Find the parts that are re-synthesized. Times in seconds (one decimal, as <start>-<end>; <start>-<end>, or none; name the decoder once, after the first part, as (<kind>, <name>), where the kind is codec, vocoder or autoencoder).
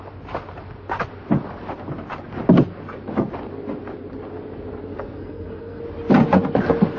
4.9-5.8 (codec, SNAC)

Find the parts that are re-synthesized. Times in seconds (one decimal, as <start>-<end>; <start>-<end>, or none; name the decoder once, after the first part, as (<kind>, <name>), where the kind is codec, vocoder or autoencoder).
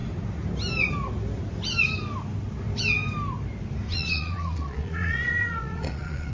3.9-6.3 (vocoder, Vocos)